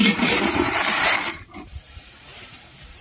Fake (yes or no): yes